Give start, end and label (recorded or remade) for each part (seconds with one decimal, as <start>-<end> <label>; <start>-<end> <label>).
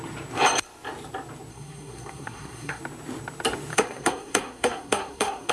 0.0-1.5 recorded; 1.5-2.8 remade; 2.8-3.7 recorded; 3.7-5.5 remade